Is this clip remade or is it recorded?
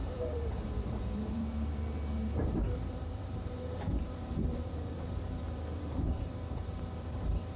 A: remade